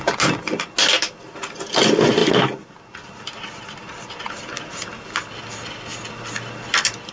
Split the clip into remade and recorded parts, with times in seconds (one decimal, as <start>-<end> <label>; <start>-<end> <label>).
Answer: 0.0-7.1 recorded